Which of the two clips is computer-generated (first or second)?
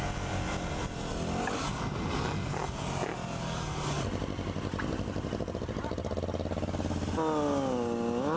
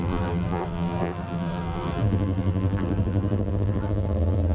second